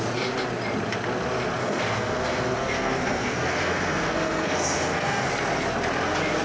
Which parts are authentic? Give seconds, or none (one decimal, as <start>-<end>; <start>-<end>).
0.0-1.6; 5.3-6.4